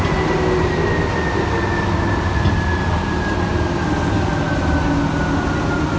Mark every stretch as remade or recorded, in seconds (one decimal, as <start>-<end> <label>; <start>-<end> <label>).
0.0-6.0 recorded